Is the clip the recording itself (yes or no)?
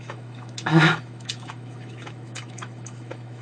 no